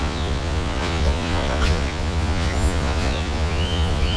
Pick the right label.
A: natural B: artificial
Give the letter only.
B